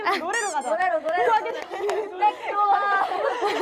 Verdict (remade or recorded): recorded